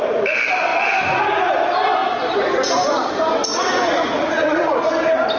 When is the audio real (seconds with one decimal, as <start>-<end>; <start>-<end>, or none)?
0.0-3.5; 4.9-5.4